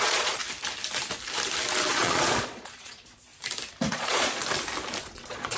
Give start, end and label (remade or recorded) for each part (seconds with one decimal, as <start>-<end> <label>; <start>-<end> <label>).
0.0-0.4 remade; 0.4-1.9 recorded; 1.9-3.3 remade; 3.3-3.9 recorded; 3.9-4.4 remade; 4.4-5.0 recorded; 5.0-5.6 remade